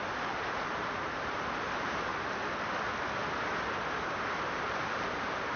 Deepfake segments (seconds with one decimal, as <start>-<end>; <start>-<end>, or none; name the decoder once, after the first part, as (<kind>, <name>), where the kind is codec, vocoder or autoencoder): 0.0-2.1 (vocoder, BigVGAN v2); 4.5-5.6